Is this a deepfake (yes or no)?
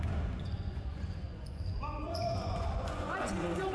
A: yes